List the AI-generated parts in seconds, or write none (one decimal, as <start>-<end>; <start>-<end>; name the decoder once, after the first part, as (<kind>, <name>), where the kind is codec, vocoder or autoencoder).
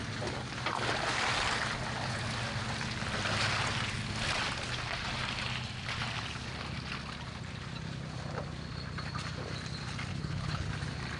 10.1-10.7 (codec, HILCodec)